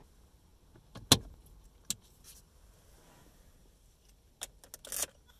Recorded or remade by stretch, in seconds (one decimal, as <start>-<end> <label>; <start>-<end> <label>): 0.0-5.4 recorded